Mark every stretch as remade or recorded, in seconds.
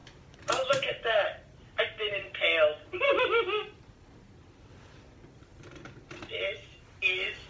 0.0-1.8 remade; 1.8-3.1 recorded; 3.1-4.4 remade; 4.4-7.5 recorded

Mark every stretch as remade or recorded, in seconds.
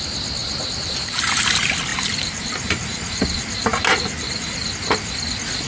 0.0-0.4 recorded; 0.4-1.4 remade; 1.4-1.9 recorded; 1.9-4.7 remade; 4.7-5.7 recorded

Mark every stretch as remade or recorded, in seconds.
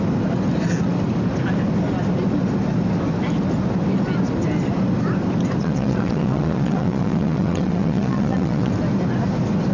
0.0-5.6 recorded; 5.6-8.7 remade; 8.7-9.7 recorded